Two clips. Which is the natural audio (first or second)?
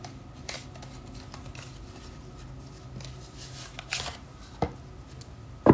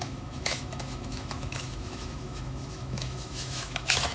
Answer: first